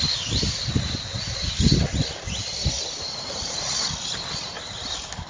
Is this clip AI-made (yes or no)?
no